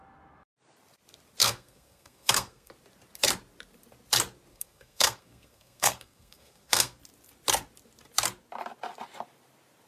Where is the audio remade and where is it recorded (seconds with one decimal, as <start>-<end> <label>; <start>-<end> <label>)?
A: 0.0-1.4 recorded; 1.4-2.7 remade; 2.7-4.5 recorded; 4.5-7.0 remade; 7.0-9.9 recorded